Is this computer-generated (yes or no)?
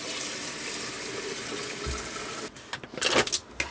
no